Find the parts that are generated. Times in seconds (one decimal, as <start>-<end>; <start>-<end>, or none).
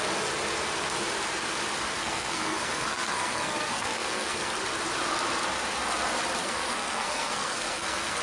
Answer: 2.0-4.5; 6.4-8.2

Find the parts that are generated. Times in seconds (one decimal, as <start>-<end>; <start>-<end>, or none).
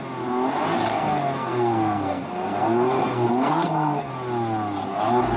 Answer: 0.9-4.1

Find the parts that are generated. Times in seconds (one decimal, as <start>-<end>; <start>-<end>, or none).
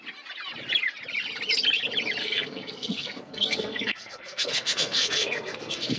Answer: 2.2-6.0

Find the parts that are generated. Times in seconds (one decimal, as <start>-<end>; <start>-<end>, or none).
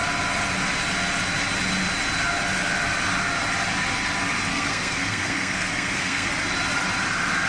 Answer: 4.5-6.3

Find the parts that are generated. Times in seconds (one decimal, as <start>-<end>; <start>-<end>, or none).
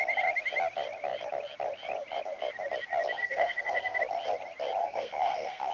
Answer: 3.2-4.0; 4.8-5.7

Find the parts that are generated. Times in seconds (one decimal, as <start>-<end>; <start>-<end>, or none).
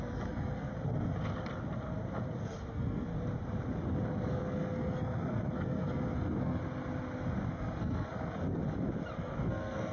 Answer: 0.0-0.7; 2.7-3.1; 4.3-6.6; 7.5-8.6; 9.2-9.9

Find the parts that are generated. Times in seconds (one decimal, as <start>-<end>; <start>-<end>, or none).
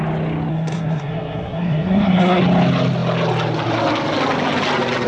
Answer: 0.5-2.4